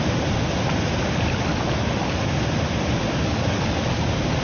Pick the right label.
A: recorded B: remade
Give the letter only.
A